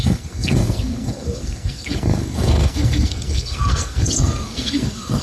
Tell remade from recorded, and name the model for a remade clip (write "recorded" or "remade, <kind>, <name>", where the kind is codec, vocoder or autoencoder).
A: remade, codec, SNAC